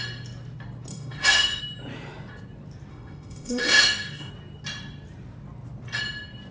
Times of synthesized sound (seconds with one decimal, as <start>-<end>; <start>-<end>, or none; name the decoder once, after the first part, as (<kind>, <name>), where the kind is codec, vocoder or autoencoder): 0.9-1.6 (autoencoder, DAC-VAE); 2.9-4.3